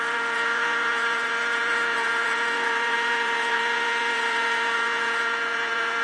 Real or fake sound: fake